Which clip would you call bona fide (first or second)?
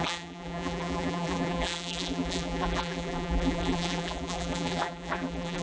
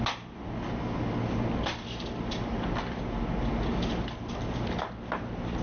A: second